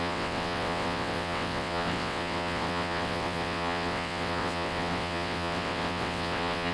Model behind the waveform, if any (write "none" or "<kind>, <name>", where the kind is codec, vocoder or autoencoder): vocoder, WaveNeXt